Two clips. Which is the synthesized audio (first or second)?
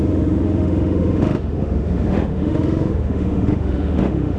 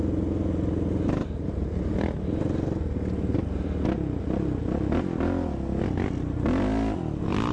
first